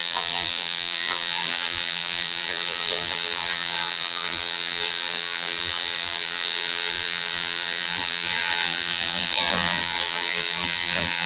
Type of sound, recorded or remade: remade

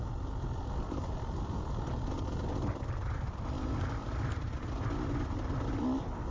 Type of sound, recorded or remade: recorded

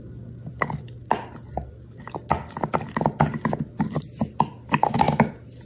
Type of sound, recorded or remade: recorded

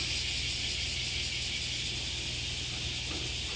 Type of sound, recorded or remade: recorded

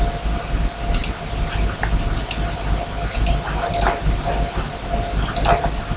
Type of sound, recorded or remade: recorded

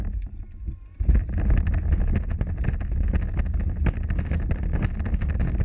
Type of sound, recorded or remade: recorded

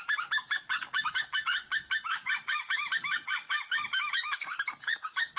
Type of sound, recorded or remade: remade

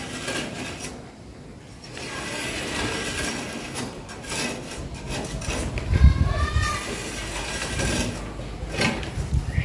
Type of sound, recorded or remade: recorded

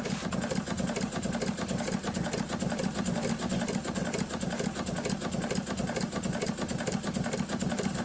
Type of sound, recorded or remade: recorded